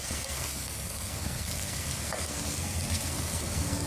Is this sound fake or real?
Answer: fake